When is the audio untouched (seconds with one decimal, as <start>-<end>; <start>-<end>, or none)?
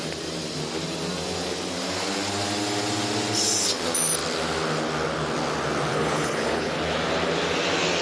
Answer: 0.0-5.9; 6.8-8.0